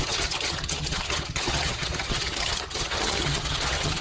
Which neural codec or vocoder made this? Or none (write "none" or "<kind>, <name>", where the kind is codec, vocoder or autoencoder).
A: vocoder, HiFi-GAN